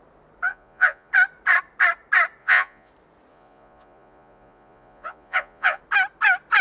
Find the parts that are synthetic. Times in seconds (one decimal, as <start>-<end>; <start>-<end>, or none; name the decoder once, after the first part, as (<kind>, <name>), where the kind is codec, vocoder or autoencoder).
0.5-1.1 (vocoder, Vocos); 2.4-2.9; 3.3-5.8